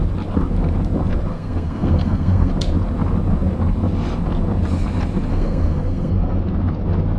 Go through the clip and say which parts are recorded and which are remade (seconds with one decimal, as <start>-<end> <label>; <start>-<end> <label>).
0.0-1.3 recorded; 1.3-2.5 remade; 2.5-5.3 recorded; 5.3-6.4 remade; 6.4-7.2 recorded